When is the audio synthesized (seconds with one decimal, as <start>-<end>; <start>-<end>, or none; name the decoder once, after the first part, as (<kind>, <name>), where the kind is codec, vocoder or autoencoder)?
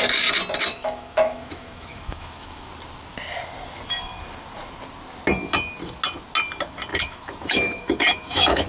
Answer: 0.7-2.7 (autoencoder, DAC-VAE); 6.9-8.7